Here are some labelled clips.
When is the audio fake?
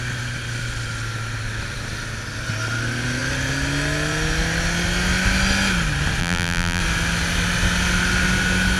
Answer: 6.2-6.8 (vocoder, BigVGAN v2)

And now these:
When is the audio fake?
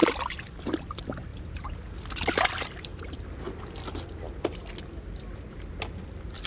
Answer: 0.0-0.6 (vocoder, BigVGAN v2); 2.9-3.6